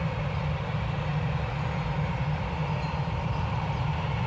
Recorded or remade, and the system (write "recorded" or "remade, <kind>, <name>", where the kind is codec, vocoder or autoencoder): recorded